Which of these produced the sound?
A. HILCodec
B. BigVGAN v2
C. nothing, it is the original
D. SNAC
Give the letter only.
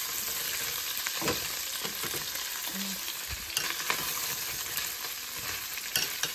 C